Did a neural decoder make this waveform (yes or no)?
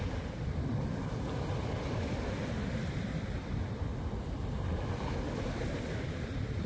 no